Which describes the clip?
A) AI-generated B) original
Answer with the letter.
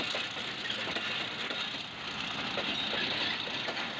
B